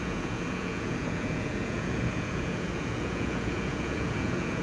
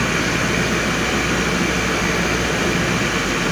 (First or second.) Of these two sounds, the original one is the second